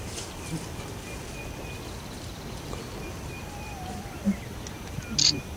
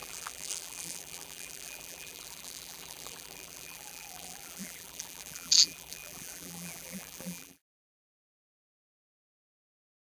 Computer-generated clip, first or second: second